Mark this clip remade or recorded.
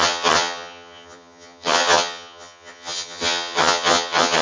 remade